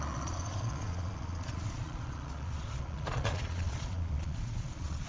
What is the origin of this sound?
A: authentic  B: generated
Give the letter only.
B